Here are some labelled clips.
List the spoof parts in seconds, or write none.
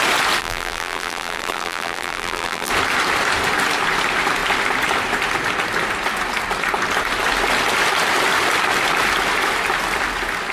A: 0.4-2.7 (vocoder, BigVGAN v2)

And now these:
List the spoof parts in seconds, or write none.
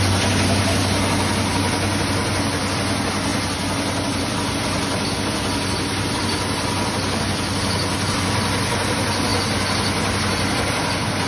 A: none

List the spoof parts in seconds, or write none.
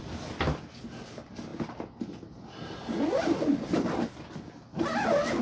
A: none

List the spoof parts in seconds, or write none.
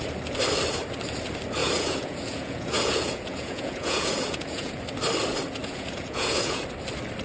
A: 1.6-4.8 (vocoder, Vocos); 5.6-6.6